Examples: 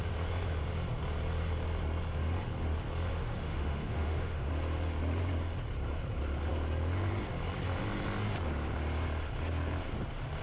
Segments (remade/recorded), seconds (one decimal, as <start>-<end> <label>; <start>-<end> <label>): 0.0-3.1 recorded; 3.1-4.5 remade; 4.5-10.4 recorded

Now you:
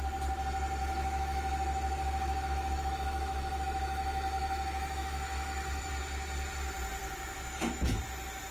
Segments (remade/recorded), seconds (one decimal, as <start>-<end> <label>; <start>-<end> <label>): 0.0-0.8 recorded; 0.8-5.9 remade; 5.9-7.0 recorded; 7.0-8.0 remade; 8.0-8.5 recorded

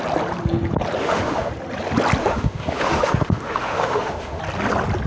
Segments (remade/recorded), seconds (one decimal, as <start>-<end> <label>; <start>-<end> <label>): 0.0-1.0 recorded; 1.0-1.5 remade; 1.5-2.2 recorded; 2.2-4.4 remade; 4.4-5.1 recorded

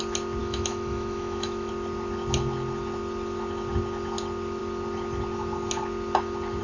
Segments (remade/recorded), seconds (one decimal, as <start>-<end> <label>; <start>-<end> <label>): 0.0-0.4 recorded; 0.4-1.7 remade; 1.7-6.6 recorded